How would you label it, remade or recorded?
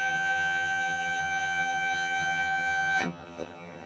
remade